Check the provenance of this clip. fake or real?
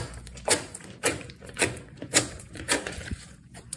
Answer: fake